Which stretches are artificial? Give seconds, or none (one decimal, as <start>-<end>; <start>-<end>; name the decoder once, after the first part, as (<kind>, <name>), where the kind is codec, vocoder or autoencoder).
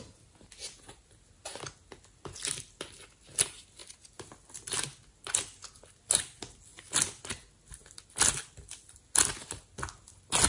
none